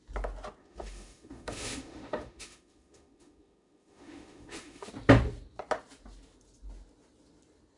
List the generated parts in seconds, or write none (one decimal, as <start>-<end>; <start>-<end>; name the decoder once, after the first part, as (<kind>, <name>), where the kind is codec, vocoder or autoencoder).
0.6-4.9 (autoencoder, DAC-VAE)